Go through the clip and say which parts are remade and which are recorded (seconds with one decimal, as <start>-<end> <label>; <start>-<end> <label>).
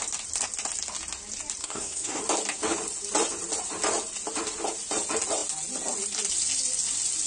0.0-1.6 recorded; 1.6-2.2 remade; 2.2-7.3 recorded